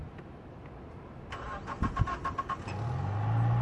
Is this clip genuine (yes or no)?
yes